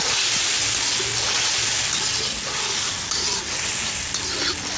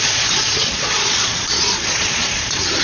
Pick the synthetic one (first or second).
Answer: second